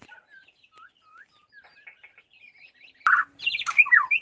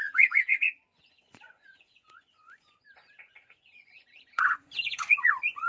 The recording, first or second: first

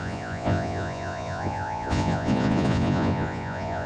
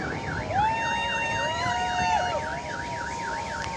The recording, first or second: second